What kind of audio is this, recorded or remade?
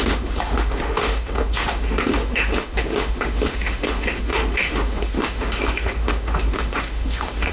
remade